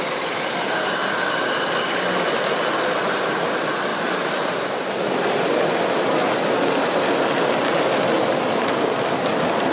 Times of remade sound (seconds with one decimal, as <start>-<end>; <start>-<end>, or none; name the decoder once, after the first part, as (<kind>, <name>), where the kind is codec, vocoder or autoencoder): 1.0-1.7 (vocoder, BigVGAN v2); 3.9-5.1